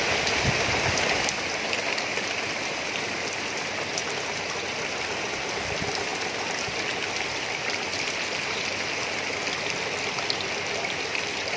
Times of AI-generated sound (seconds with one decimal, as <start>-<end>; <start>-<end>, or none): none